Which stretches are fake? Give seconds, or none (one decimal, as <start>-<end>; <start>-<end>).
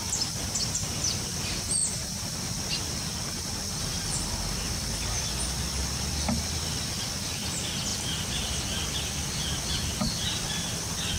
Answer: 7.9-8.8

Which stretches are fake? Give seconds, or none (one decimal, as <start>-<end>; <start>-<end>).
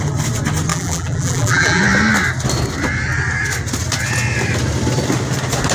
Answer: 0.7-1.8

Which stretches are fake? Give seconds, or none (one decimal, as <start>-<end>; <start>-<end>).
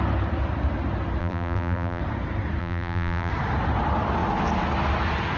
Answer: 1.2-2.0; 2.6-3.3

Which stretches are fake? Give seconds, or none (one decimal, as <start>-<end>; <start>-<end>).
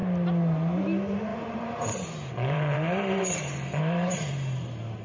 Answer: 1.3-4.3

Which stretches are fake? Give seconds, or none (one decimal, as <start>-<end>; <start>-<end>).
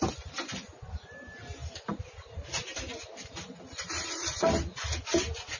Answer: none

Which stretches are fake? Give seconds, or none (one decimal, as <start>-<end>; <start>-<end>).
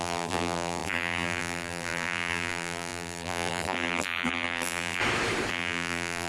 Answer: 0.0-5.0; 5.5-6.3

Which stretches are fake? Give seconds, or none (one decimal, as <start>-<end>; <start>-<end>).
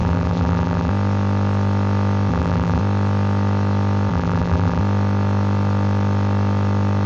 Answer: 0.0-0.9; 2.3-2.8; 4.1-4.8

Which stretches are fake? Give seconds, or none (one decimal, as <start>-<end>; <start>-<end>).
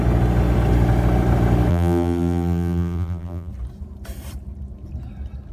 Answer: 1.7-3.5